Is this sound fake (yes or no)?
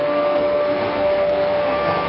yes